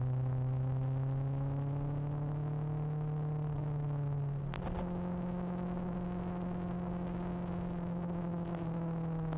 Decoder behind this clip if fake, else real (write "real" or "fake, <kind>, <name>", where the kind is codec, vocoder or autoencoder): real